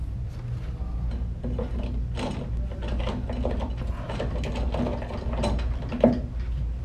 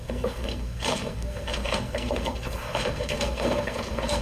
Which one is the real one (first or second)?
first